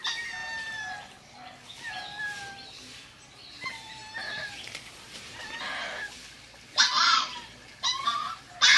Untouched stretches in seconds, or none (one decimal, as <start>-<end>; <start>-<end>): 0.0-4.2; 8.4-8.8